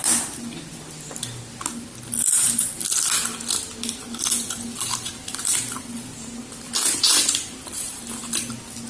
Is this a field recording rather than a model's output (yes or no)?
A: yes